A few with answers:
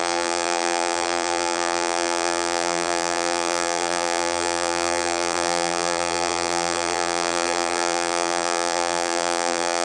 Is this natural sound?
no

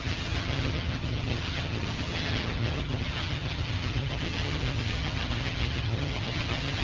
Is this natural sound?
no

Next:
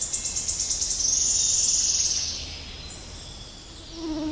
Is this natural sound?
yes